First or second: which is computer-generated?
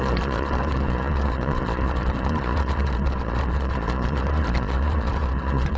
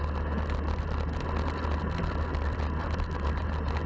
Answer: first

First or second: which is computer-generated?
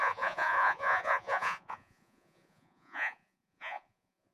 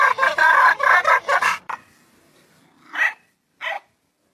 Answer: first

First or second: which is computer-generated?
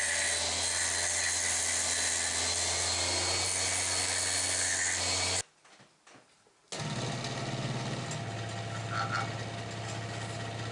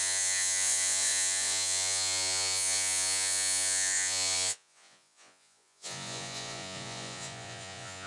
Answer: second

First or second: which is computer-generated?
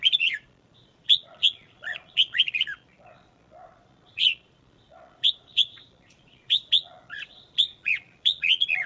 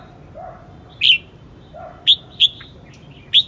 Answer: first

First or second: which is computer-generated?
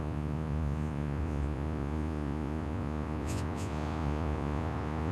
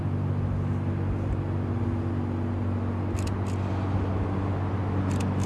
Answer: first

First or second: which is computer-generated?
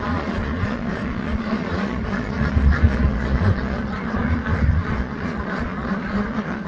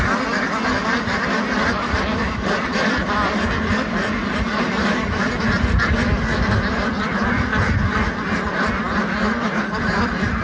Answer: first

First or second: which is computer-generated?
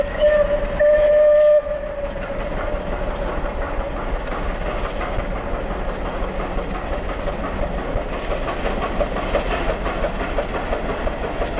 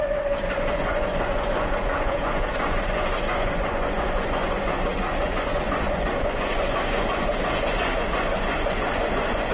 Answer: second